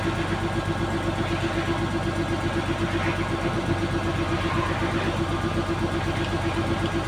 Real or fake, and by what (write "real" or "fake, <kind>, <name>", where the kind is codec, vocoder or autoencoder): real